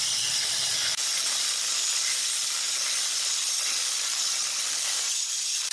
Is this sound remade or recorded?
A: recorded